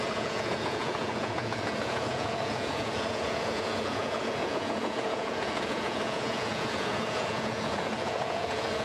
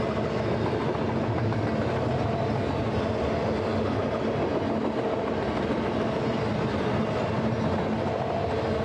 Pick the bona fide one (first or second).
second